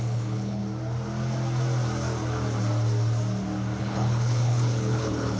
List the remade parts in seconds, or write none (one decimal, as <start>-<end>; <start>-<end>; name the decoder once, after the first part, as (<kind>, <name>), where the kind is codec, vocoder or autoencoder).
0.0-0.6 (codec, HILCodec); 3.8-5.4